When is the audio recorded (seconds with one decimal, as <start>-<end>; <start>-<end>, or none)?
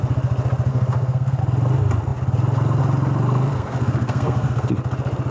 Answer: 0.0-0.7; 1.4-3.5; 4.7-5.3